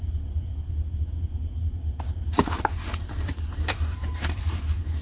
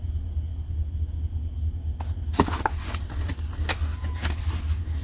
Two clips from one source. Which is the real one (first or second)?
second